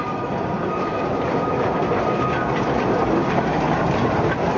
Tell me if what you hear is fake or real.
real